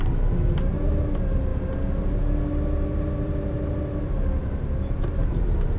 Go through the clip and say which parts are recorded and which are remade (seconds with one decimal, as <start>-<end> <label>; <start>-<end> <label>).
0.0-1.5 remade; 1.5-2.0 recorded; 2.0-4.1 remade; 4.1-5.3 recorded; 5.3-5.8 remade